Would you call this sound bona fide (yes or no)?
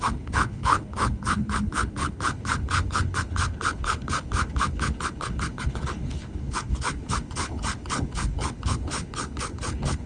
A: no